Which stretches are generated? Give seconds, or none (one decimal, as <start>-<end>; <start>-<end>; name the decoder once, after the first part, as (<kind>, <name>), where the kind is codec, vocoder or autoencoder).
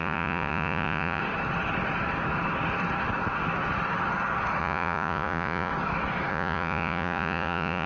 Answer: 0.0-1.2 (vocoder, Vocos); 4.6-5.7; 6.3-7.9